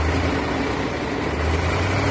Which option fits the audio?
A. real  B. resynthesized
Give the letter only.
A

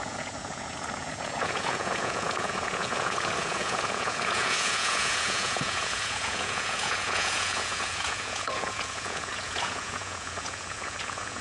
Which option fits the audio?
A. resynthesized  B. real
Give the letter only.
A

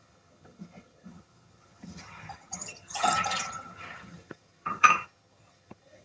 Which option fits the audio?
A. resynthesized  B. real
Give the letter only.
A